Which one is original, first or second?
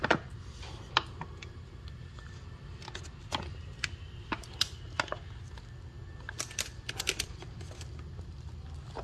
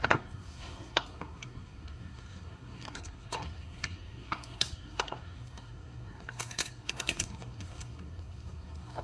first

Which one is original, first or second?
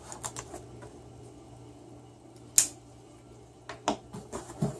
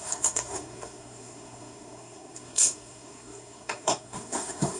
first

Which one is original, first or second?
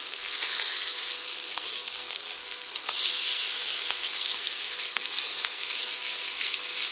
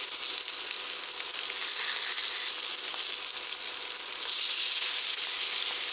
second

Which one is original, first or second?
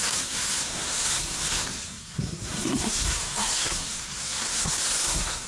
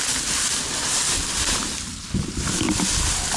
second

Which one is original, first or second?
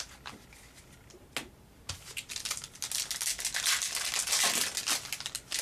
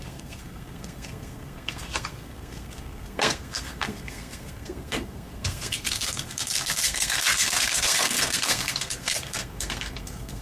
first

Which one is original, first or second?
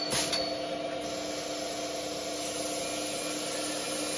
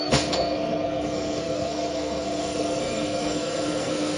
first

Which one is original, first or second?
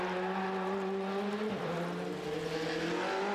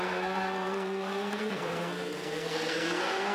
first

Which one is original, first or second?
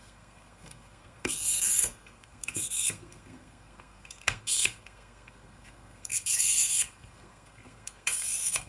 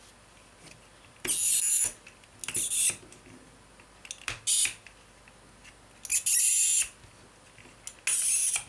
second